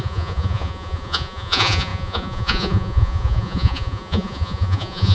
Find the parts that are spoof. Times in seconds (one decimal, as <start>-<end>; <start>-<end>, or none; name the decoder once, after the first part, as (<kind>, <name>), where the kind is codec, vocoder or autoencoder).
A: 0.0-5.1 (vocoder, Vocos)